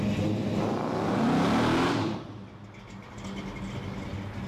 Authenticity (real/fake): real